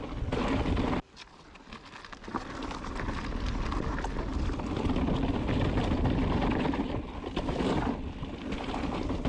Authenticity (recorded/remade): recorded